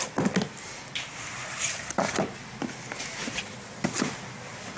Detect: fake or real real